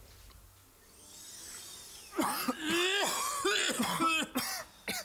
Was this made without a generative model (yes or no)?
yes